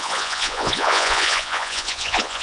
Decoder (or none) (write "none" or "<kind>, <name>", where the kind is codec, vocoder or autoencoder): vocoder, Vocos